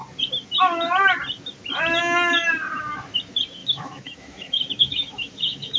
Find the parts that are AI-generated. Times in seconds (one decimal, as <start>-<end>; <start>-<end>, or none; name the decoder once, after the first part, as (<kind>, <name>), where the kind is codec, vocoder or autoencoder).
3.6-5.8 (autoencoder, DAC-VAE)